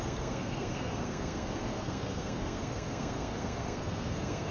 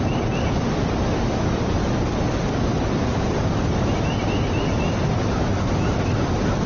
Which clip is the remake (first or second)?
first